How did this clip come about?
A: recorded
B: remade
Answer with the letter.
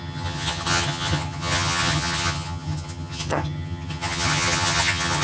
B